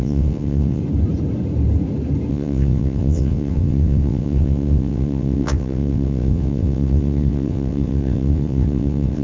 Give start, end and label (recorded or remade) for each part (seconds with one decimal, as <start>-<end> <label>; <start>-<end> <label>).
0.0-0.8 remade; 0.8-2.3 recorded; 2.3-9.2 remade